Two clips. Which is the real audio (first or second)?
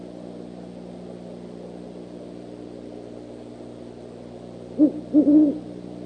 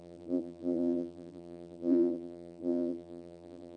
first